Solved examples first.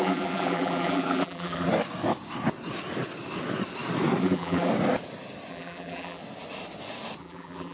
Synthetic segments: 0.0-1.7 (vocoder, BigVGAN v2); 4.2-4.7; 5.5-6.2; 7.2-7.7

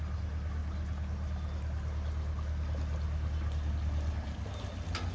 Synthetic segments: none

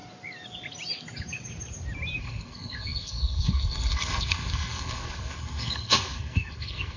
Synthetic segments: 2.2-7.0 (codec, SNAC)

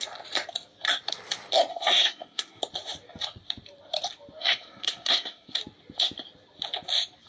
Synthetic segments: 1.7-2.6 (codec, SNAC); 4.4-5.6

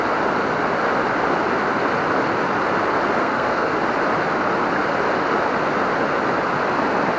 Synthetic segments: 3.2-3.7 (codec, SNAC)

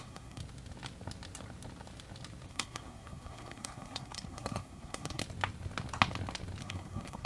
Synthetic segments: 0.0-0.4 (codec, SNAC); 2.5-5.2; 6.6-7.3

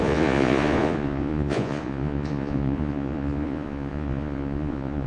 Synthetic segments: 0.0-5.1 (vocoder, Vocos)